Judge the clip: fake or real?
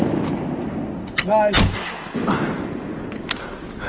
real